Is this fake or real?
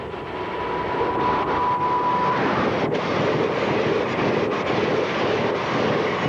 real